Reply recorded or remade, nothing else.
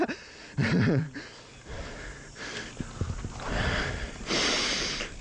recorded